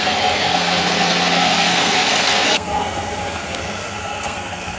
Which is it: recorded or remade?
remade